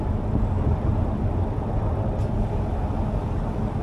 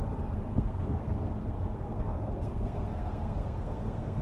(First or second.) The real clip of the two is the first